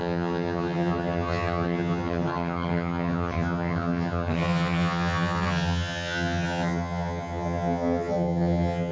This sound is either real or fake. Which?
fake